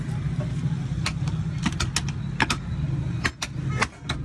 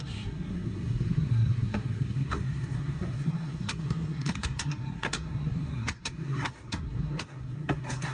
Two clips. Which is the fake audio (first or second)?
second